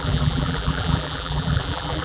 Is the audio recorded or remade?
remade